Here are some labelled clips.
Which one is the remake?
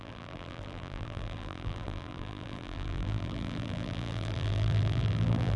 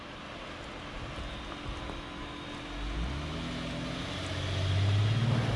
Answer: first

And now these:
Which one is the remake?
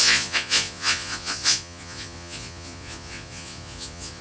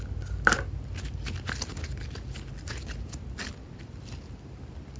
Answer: first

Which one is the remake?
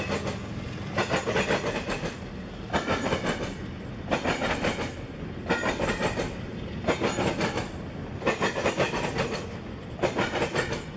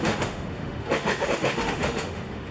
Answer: second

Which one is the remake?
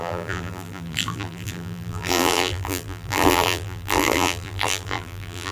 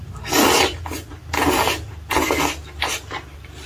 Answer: first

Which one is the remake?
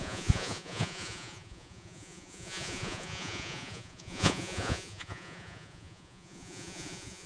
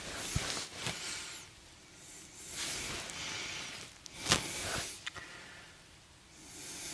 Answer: first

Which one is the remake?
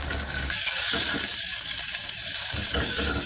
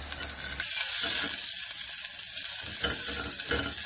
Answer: first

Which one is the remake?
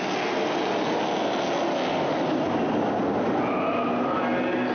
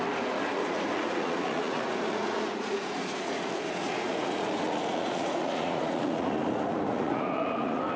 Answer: second